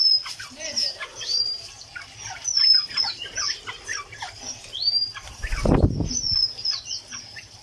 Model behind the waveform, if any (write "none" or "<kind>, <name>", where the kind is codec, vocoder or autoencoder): none